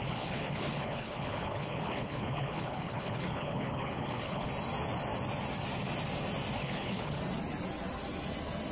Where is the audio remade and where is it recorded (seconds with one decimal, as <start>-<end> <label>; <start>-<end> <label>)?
0.0-4.5 remade; 4.5-6.6 recorded; 6.6-7.2 remade; 7.2-8.7 recorded